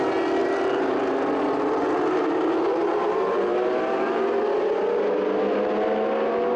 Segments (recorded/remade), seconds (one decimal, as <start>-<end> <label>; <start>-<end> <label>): 0.0-0.4 recorded; 0.4-1.0 remade; 1.0-2.8 recorded; 2.8-4.4 remade; 4.4-6.6 recorded